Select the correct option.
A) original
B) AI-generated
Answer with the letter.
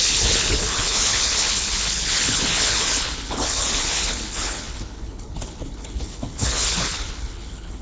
B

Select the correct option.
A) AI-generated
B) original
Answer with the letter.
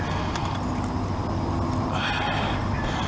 B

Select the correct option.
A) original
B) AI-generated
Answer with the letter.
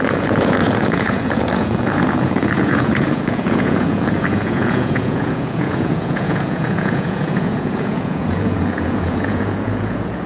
B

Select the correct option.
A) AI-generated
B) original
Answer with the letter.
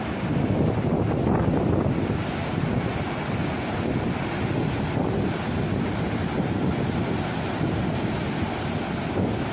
B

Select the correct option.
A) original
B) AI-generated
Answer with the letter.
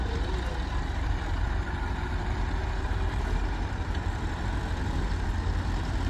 B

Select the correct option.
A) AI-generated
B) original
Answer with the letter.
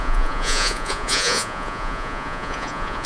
A